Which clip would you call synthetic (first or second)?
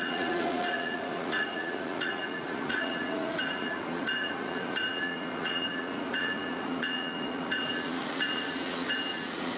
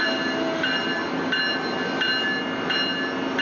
first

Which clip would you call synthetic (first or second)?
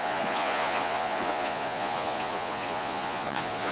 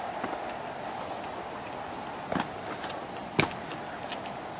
first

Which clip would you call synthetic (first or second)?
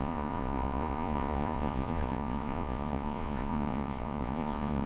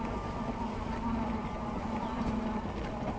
first